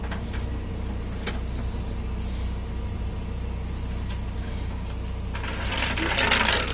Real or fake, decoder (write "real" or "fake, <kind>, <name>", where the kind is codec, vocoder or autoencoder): real